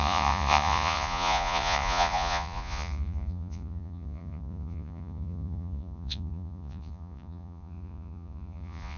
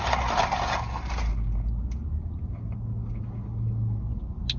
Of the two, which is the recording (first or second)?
second